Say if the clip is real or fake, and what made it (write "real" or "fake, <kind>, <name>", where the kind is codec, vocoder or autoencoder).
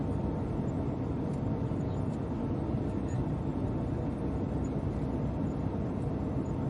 real